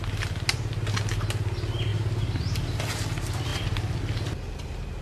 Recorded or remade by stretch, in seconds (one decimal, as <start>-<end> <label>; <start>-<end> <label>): 0.0-1.9 recorded; 1.9-2.8 remade; 2.8-3.5 recorded; 3.5-4.0 remade; 4.0-5.0 recorded